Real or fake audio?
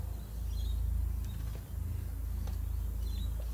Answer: real